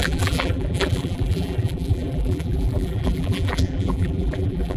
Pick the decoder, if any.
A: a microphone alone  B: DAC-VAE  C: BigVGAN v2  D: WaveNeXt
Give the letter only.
C